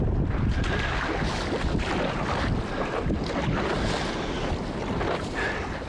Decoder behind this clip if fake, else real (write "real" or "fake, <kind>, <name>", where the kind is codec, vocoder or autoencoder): real